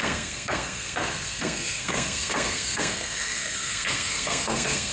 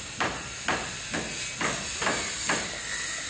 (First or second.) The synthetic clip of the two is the first